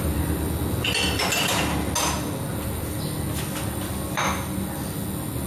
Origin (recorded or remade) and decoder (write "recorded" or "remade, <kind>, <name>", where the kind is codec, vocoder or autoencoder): recorded